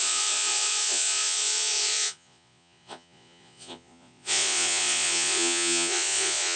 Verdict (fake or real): fake